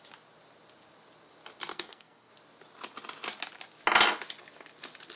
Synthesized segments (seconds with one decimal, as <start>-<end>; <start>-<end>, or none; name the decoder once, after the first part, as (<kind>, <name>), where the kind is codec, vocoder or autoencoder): 1.7-2.3 (codec, SNAC)